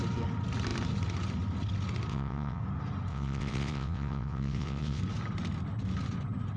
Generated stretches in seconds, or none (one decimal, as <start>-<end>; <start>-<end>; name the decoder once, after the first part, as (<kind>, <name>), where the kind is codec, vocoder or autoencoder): 2.1-2.6 (vocoder, WaveNeXt); 3.1-5.0